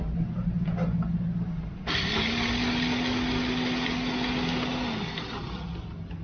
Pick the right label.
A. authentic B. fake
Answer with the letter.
A